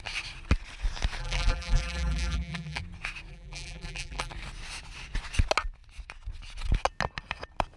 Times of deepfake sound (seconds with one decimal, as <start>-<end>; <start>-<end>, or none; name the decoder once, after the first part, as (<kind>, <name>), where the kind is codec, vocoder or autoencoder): 1.2-2.8 (vocoder, BigVGAN v2); 3.3-4.3